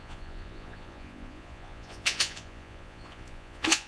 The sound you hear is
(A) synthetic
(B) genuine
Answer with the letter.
A